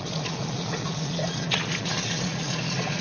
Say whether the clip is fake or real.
fake